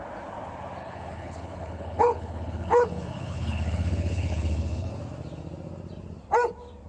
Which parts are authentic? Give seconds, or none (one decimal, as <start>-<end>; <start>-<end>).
0.0-0.8; 4.9-6.9